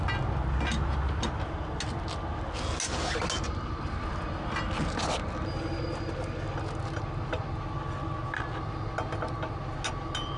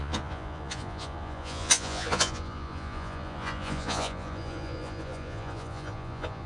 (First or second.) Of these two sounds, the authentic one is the first